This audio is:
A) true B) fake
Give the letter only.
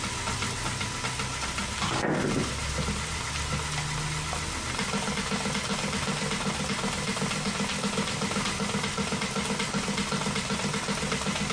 A